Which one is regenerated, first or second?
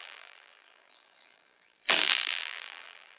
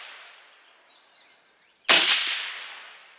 first